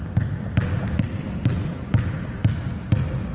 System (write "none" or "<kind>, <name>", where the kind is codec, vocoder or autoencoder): none